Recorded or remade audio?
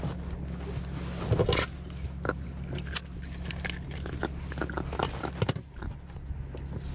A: recorded